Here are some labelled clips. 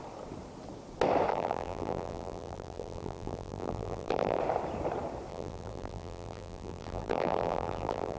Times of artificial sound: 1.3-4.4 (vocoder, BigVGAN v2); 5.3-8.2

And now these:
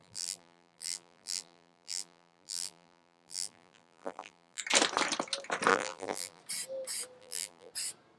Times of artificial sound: 0.0-4.6 (vocoder, BigVGAN v2); 5.7-6.4; 7.2-7.7

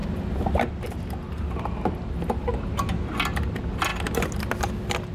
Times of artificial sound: none

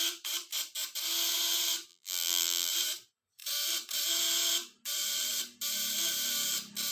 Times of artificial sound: 1.9-2.7 (vocoder, BigVGAN v2)

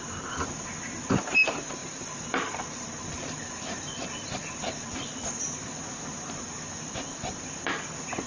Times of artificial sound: 1.8-3.2 (vocoder, BigVGAN v2)